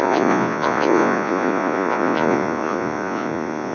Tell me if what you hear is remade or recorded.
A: remade